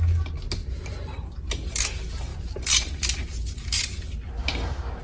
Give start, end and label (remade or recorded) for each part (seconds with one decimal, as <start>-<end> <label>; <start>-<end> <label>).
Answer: 0.0-4.4 recorded; 4.4-5.0 remade